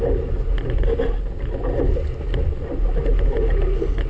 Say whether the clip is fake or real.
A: real